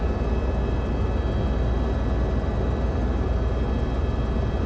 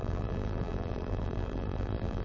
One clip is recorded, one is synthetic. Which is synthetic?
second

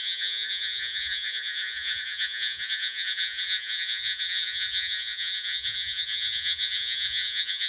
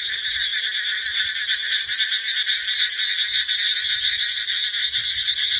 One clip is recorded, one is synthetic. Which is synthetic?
first